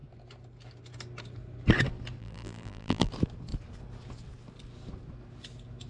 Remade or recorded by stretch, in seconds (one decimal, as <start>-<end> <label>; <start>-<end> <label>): 0.0-2.2 recorded; 2.2-3.1 remade; 3.1-5.9 recorded